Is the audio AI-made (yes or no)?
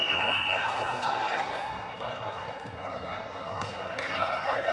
yes